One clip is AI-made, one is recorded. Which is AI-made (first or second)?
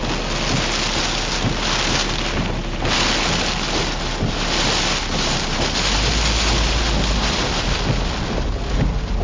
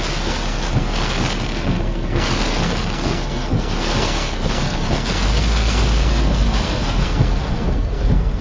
second